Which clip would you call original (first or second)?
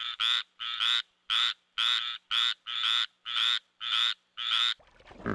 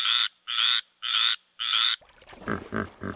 first